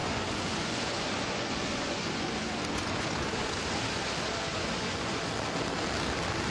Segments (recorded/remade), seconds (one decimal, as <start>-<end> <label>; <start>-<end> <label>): 0.0-3.6 remade; 3.6-4.5 recorded; 4.5-5.3 remade; 5.3-6.5 recorded